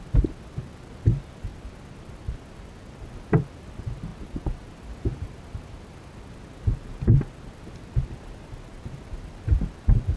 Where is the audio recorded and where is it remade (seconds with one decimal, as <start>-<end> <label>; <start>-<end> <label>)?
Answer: 0.0-10.2 recorded

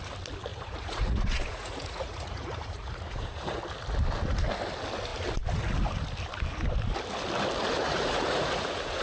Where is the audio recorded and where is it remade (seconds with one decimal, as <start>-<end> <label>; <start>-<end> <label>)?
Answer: 0.0-0.5 recorded; 0.5-3.6 remade; 3.6-7.8 recorded; 7.8-9.0 remade